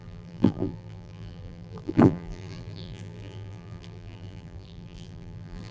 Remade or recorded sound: remade